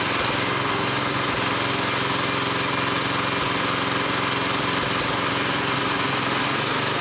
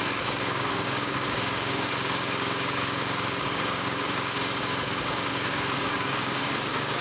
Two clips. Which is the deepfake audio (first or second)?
second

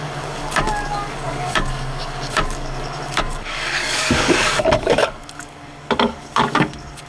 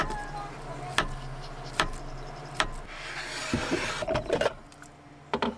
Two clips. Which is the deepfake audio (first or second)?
first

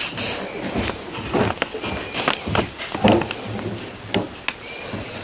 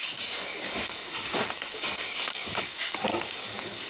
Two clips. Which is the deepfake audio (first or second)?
second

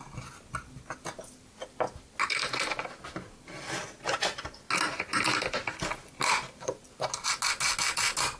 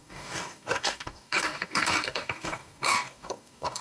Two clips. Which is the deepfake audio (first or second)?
second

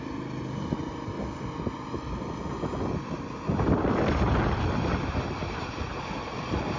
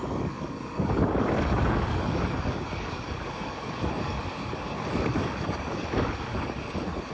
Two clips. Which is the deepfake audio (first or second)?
second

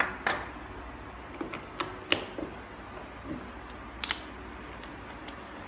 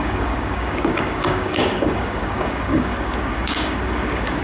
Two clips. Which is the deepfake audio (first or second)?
second